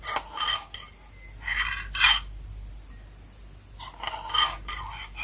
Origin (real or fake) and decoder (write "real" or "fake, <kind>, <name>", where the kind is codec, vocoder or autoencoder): real